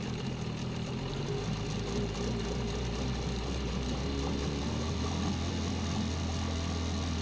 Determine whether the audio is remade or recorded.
recorded